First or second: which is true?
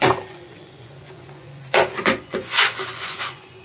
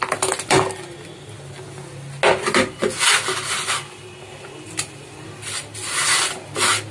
second